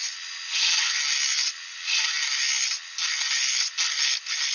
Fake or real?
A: real